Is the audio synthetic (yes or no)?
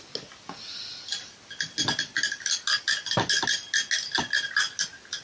no